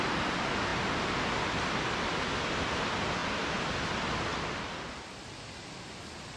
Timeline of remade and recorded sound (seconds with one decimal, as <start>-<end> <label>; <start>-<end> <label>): 0.0-6.4 recorded